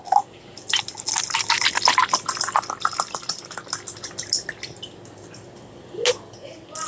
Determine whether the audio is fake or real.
real